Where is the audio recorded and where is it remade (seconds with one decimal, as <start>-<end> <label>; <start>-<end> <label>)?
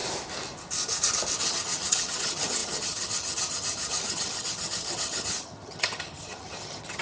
0.0-1.4 recorded; 1.4-7.0 remade